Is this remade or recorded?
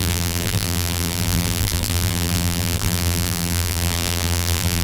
remade